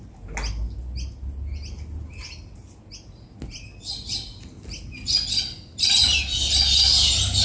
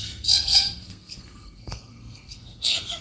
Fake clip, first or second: second